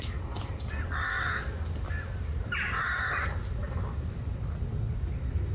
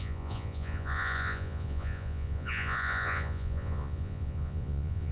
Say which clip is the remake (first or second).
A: second